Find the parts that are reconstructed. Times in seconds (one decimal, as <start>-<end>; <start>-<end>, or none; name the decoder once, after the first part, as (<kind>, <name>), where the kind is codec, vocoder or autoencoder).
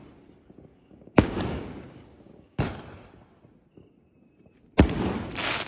0.7-2.6 (codec, DAC)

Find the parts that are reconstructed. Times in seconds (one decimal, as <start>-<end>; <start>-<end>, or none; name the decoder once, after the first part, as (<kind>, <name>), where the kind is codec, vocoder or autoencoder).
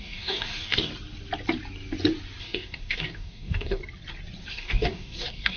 0.0-0.9 (codec, DAC); 2.4-3.8; 4.5-5.6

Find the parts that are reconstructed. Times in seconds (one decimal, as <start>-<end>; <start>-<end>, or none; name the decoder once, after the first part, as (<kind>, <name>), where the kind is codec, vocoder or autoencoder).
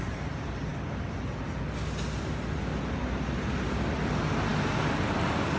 none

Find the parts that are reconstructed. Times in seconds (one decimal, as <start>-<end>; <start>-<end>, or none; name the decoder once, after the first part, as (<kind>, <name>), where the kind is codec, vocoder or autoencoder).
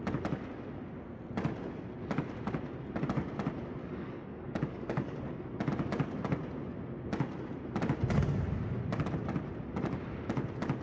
3.8-5.2 (codec, DAC)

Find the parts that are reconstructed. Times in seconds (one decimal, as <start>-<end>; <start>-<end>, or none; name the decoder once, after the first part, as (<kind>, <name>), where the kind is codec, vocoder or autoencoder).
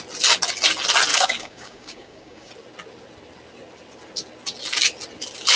1.1-2.5 (codec, DAC)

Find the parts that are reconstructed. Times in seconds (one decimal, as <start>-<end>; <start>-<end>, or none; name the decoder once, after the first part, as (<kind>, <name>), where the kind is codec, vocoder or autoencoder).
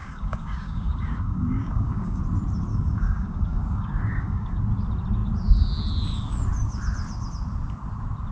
0.0-2.2 (codec, DAC); 2.7-4.6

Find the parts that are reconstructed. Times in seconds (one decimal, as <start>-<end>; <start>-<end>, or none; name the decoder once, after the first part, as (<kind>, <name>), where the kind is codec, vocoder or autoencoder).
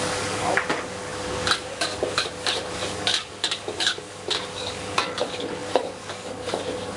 0.0-7.0 (codec, DAC)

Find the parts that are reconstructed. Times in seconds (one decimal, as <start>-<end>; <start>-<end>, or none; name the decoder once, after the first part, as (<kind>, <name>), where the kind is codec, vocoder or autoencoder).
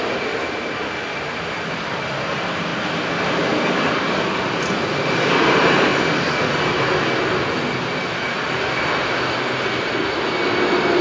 none